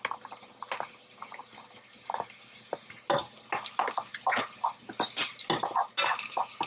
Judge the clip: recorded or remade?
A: recorded